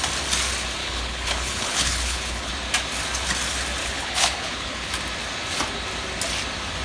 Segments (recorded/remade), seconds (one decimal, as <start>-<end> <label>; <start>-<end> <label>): 0.0-0.8 recorded; 0.8-2.5 remade; 2.5-3.8 recorded; 3.8-4.9 remade; 4.9-6.8 recorded